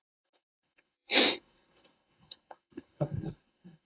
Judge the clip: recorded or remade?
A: remade